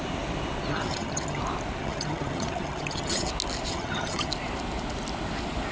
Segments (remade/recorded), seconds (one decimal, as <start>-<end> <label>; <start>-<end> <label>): 0.0-0.7 recorded; 0.7-1.4 remade; 1.4-1.8 recorded; 1.8-3.3 remade; 3.3-3.7 recorded; 3.7-4.3 remade; 4.3-5.7 recorded